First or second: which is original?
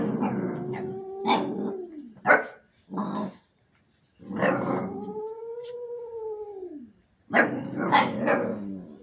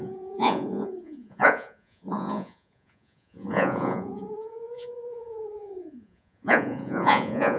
first